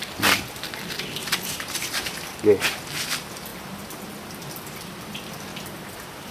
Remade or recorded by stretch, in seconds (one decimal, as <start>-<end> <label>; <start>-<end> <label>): 0.0-3.5 remade; 3.5-4.4 recorded; 4.4-5.5 remade; 5.5-6.3 recorded